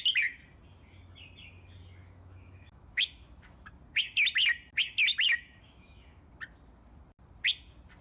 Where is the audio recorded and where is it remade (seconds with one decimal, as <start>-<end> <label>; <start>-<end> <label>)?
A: 0.0-2.0 recorded; 2.0-3.7 remade; 3.7-5.1 recorded; 5.1-6.3 remade; 6.3-8.0 recorded